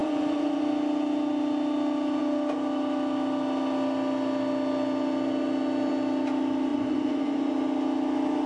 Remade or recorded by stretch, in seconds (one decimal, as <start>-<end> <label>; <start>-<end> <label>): 0.0-0.6 remade; 0.6-6.7 recorded; 6.7-7.5 remade; 7.5-8.5 recorded